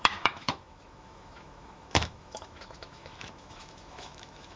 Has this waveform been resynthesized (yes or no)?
yes